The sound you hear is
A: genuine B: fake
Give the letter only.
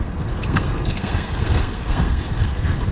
B